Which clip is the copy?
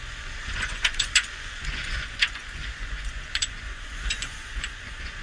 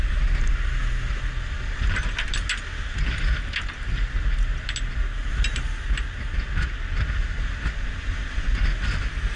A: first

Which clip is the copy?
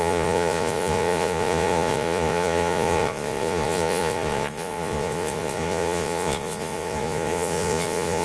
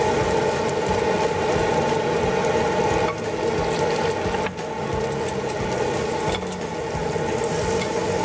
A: first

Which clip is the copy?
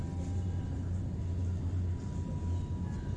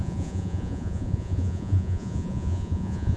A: second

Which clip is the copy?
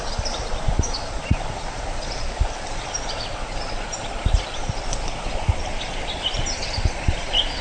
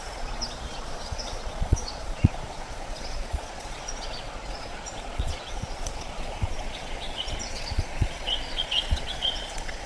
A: second